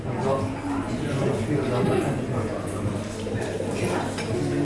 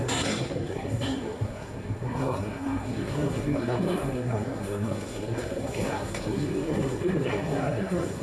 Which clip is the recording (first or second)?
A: first